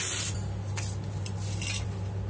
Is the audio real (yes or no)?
yes